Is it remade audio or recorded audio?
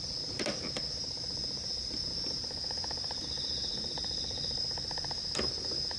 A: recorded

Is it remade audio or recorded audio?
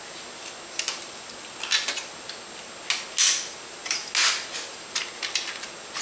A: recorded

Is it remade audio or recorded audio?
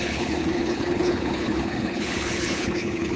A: remade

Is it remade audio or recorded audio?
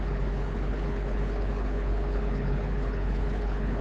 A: remade